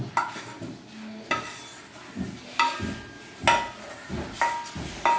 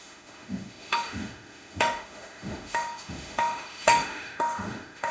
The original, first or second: first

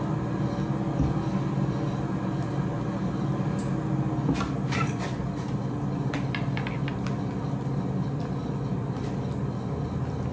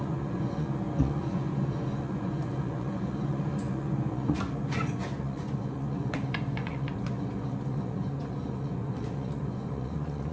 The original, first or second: first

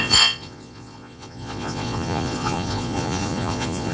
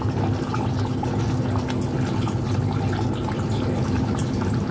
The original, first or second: second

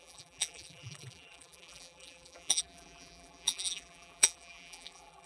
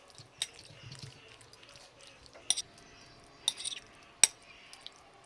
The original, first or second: second